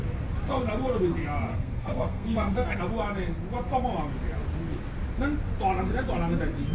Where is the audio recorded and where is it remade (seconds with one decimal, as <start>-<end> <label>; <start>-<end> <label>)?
0.0-1.5 recorded; 1.5-2.8 remade; 2.8-6.7 recorded